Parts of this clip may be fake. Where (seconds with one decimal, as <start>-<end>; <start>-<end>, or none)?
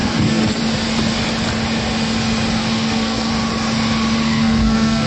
0.0-0.6; 2.6-3.3; 4.2-5.1